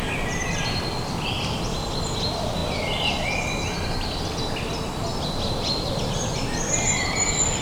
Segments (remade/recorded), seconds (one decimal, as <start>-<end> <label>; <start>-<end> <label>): 0.0-7.6 recorded